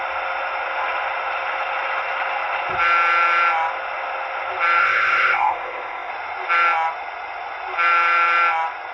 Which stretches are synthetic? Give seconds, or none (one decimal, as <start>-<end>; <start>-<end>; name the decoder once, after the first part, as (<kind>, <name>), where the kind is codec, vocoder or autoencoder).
4.8-6.1 (codec, ZipCodec)